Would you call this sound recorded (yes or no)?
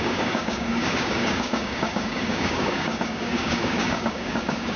no